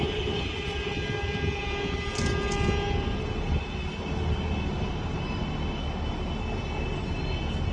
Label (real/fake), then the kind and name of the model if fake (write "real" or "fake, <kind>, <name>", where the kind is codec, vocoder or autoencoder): real